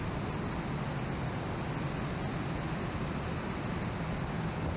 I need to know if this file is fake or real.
real